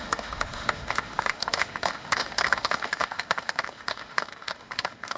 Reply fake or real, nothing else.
fake